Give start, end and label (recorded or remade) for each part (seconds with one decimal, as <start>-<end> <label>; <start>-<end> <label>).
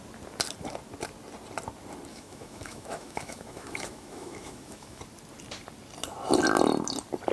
0.0-2.1 recorded; 2.1-5.0 remade; 5.0-7.3 recorded